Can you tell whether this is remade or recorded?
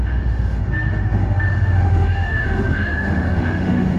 remade